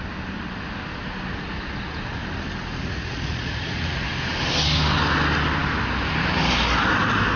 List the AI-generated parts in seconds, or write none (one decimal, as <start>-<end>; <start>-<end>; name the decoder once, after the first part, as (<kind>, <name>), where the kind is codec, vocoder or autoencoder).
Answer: 2.8-4.1 (vocoder, Vocos)